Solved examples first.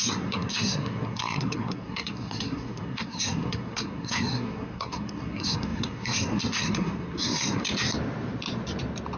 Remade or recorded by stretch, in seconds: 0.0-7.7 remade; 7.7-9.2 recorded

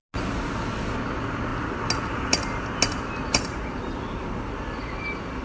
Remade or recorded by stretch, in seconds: 0.0-5.4 recorded

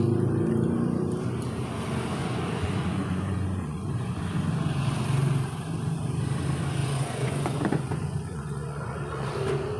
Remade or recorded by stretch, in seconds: 0.0-2.2 recorded; 2.2-4.2 remade; 4.2-6.8 recorded; 6.8-9.3 remade; 9.3-9.8 recorded

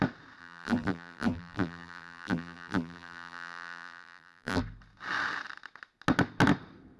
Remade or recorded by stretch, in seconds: 0.0-0.4 recorded; 0.4-4.6 remade; 4.6-7.0 recorded

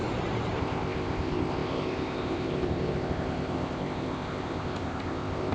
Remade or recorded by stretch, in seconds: 0.0-0.6 recorded; 0.6-5.5 remade

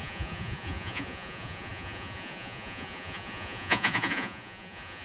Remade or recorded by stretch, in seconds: 0.0-5.0 remade